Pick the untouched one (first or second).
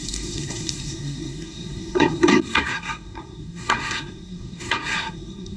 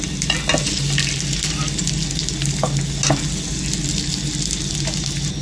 second